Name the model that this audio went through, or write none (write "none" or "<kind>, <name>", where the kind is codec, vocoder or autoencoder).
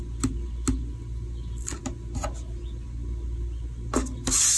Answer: none